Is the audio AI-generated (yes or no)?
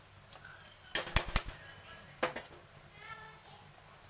no